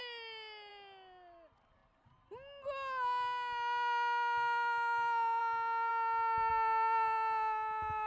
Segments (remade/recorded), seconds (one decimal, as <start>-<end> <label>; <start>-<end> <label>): 0.0-8.1 recorded